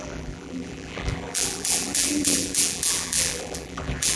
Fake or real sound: fake